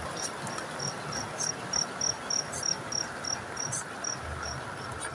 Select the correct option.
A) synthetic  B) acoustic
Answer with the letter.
B